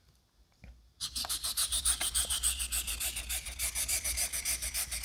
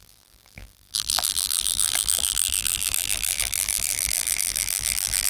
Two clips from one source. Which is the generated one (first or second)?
second